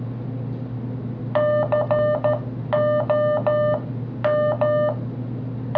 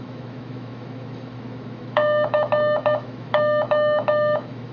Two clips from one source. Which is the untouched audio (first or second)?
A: first